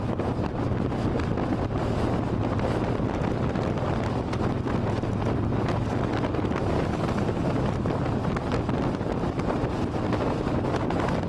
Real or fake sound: real